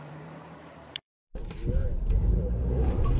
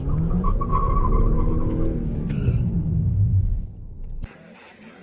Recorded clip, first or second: second